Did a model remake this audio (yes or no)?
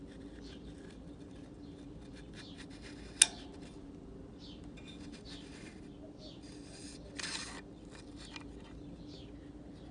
no